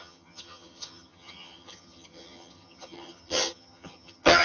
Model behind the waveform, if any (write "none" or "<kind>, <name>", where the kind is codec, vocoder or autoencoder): vocoder, HiFi-GAN